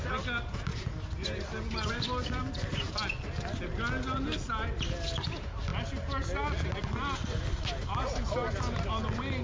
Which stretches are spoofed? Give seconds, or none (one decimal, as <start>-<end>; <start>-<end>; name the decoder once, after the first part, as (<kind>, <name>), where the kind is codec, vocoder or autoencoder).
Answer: none